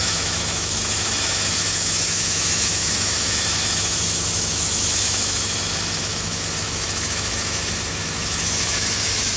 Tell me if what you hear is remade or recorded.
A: remade